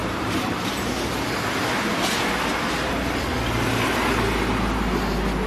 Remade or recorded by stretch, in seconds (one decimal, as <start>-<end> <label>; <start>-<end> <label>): 0.0-0.9 remade; 0.9-5.5 recorded

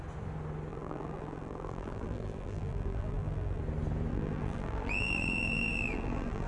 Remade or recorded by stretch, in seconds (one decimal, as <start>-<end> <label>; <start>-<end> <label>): 0.0-0.7 recorded; 0.7-3.6 remade; 3.6-4.1 recorded; 4.1-6.5 remade

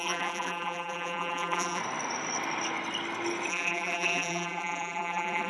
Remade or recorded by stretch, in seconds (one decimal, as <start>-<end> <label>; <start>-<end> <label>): 0.0-1.8 remade; 1.8-3.5 recorded; 3.5-5.5 remade

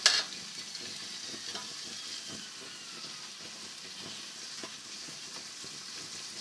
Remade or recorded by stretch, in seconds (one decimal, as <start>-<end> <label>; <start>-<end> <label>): 0.0-6.4 recorded

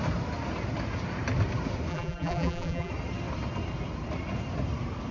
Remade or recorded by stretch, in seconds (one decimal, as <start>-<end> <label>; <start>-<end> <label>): 0.0-1.9 recorded; 1.9-2.9 remade; 2.9-5.1 recorded

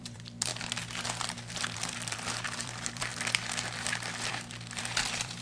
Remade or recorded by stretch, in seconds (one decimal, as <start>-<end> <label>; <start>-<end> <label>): 0.0-0.5 remade; 0.5-1.6 recorded; 1.6-3.1 remade; 3.1-4.3 recorded; 4.3-5.4 remade

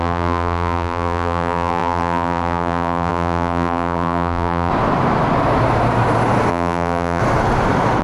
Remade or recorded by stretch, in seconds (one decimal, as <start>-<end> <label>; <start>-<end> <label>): 0.0-4.7 remade; 4.7-6.5 recorded; 6.5-7.2 remade; 7.2-8.0 recorded